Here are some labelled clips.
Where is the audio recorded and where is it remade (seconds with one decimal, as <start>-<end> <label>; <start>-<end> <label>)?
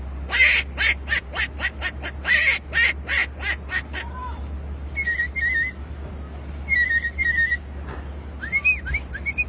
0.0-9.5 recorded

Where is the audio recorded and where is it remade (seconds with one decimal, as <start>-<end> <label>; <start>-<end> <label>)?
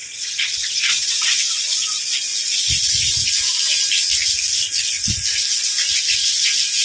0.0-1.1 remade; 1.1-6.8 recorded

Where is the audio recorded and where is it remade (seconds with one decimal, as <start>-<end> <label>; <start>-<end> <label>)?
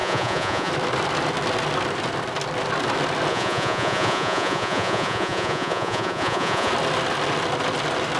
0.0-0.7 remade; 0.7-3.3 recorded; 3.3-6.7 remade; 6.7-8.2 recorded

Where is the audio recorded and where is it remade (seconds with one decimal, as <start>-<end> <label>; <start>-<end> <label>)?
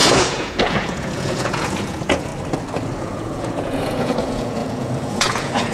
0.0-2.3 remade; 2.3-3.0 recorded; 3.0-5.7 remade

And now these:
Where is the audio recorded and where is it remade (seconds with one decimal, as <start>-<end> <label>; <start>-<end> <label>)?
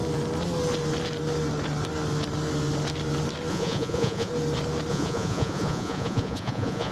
0.0-3.5 recorded; 3.5-4.3 remade; 4.3-4.9 recorded; 4.9-6.9 remade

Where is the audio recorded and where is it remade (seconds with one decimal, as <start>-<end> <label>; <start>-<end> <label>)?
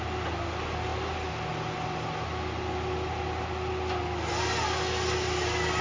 0.0-5.8 recorded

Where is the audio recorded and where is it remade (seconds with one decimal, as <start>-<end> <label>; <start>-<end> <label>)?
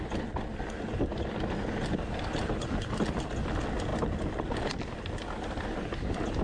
0.0-6.4 recorded